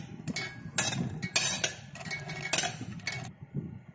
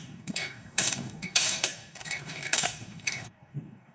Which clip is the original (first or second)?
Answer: first